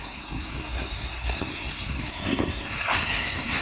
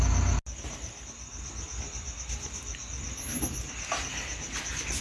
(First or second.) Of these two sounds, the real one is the second